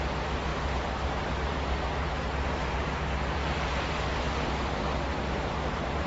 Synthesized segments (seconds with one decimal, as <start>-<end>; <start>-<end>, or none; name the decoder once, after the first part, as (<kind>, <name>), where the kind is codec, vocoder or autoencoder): 0.5-4.2 (vocoder, BigVGAN v2); 5.1-6.1